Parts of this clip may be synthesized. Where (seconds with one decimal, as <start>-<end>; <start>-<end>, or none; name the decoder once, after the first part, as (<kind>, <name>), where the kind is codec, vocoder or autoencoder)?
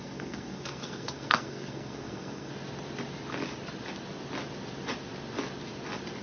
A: 0.0-2.5 (codec, SNAC)